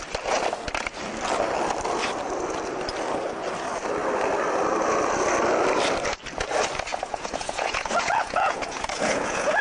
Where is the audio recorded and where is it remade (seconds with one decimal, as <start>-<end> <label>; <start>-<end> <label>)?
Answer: 0.0-6.9 recorded; 6.9-9.6 remade